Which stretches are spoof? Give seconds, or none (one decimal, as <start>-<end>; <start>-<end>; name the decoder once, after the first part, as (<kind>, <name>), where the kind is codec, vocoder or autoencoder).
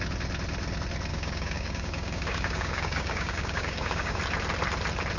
1.1-4.2 (codec, DAC)